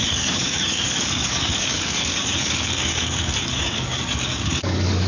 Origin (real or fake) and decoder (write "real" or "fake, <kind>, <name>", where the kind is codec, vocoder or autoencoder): fake, codec, DAC